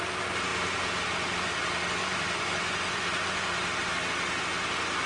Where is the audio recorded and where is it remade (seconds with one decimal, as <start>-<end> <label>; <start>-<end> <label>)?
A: 0.0-2.0 recorded; 2.0-3.5 remade; 3.5-5.1 recorded